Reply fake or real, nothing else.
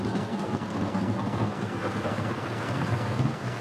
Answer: fake